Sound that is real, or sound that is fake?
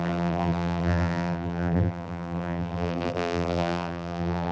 fake